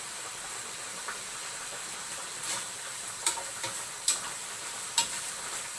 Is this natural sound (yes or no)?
no